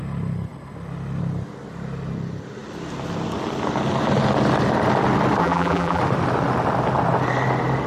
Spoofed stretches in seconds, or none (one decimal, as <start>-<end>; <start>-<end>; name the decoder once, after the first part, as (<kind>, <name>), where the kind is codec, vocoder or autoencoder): 5.4-6.0 (vocoder, BigVGAN v2)

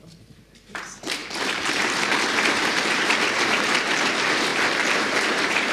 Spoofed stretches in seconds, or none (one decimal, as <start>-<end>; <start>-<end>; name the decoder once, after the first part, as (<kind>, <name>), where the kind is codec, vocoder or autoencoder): 0.0-5.7 (vocoder, BigVGAN v2)

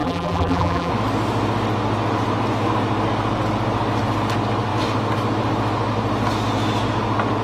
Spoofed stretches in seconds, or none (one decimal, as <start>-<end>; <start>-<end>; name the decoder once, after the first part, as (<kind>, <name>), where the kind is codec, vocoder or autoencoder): 0.0-0.9 (vocoder, BigVGAN v2)

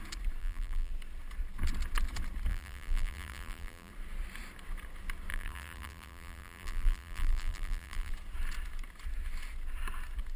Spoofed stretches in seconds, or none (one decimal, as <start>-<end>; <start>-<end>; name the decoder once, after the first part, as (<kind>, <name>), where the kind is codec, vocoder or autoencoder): 0.4-0.9 (vocoder, BigVGAN v2); 2.5-3.9; 5.3-8.1

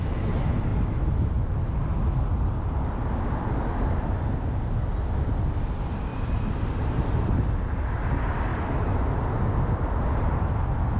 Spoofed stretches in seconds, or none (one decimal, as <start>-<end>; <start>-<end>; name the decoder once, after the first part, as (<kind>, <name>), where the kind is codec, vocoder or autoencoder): 0.7-1.4 (vocoder, BigVGAN v2); 6.1-7.5; 8.5-9.0

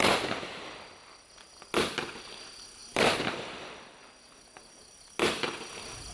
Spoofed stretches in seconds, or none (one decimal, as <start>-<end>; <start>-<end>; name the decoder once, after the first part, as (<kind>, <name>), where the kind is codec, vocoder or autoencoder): 2.8-3.9 (vocoder, BigVGAN v2)